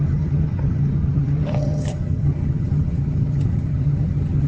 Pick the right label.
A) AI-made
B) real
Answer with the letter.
A